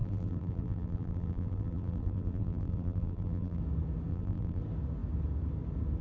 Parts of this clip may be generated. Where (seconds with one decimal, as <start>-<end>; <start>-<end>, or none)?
0.0-3.6; 4.1-4.6